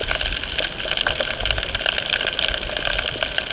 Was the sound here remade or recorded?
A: recorded